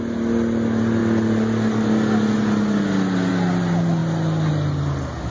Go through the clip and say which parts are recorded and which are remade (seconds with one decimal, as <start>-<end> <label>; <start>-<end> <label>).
0.0-5.3 recorded